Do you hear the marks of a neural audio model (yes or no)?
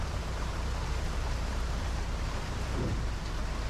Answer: yes